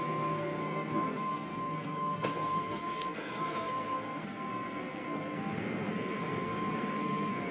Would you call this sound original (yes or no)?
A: no